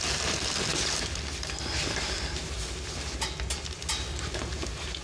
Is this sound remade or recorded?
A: recorded